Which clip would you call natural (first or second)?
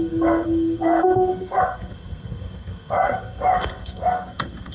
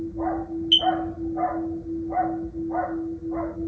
second